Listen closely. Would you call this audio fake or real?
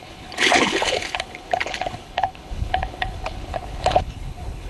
fake